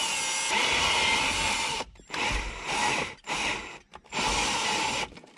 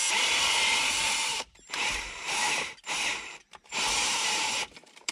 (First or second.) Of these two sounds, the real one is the first